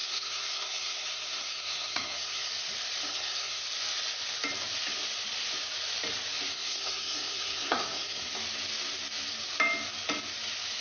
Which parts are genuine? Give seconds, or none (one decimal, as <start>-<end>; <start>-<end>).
2.5-3.0; 3.6-6.5; 8.3-10.8